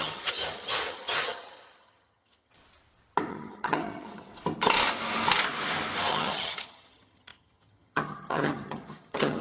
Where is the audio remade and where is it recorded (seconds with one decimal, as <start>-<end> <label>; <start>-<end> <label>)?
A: 0.0-2.6 remade; 2.6-3.3 recorded; 3.3-4.3 remade; 4.3-6.1 recorded; 6.1-9.4 remade